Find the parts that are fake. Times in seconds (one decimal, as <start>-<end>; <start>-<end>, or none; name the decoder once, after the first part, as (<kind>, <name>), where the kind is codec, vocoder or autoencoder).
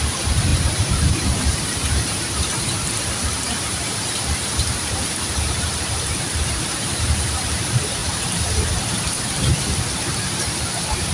0.0-11.1 (vocoder, BigVGAN v2)